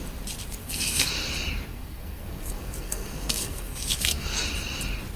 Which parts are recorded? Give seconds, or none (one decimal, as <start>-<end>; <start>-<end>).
0.0-0.6; 1.1-1.7; 4.4-5.2